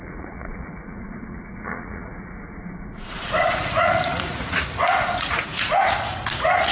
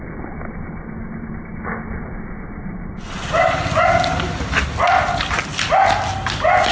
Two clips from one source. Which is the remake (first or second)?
first